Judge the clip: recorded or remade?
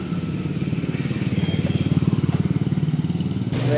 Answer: recorded